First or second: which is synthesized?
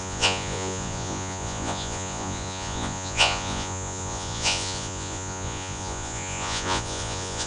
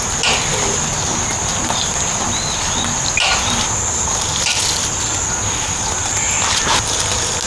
first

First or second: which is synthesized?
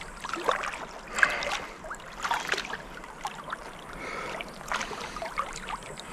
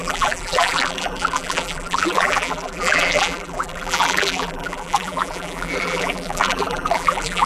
second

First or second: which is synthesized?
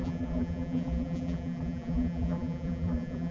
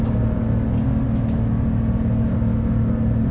first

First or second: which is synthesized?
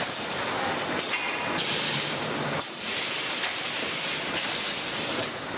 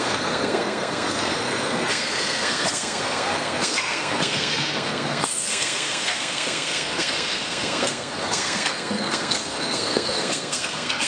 second